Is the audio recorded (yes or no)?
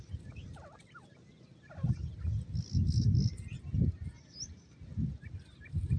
yes